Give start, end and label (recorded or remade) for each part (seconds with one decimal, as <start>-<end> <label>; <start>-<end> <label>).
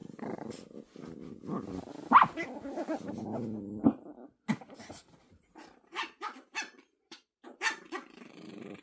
0.0-4.5 recorded; 4.5-8.8 remade